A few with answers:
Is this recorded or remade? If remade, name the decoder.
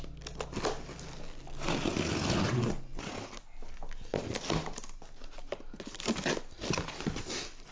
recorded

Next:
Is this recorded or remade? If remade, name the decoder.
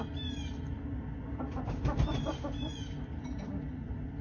recorded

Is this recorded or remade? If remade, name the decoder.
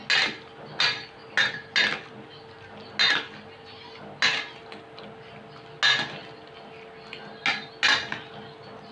recorded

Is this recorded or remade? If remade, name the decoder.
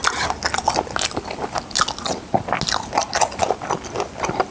recorded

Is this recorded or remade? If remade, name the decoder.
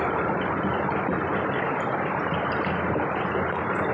recorded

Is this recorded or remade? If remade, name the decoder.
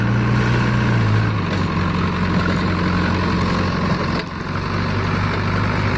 recorded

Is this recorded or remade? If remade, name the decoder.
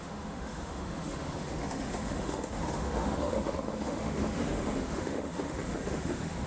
remade, autoencoder, DAC-VAE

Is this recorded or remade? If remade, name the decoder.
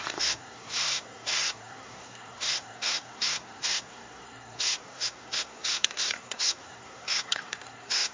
remade, codec, SNAC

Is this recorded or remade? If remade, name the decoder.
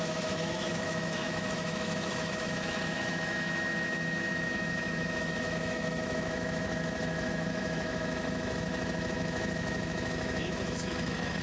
remade, autoencoder, DAC-VAE